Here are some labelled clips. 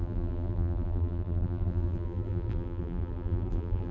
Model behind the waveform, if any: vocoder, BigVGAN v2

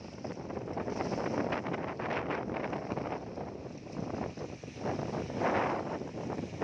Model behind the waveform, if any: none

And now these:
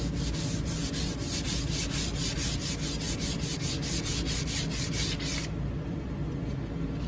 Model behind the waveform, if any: none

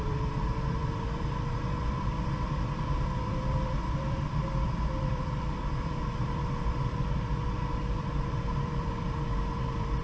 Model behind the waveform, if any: vocoder, BigVGAN v2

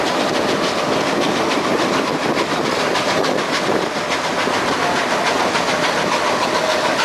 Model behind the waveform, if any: none